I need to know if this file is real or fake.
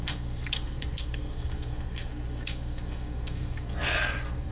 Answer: fake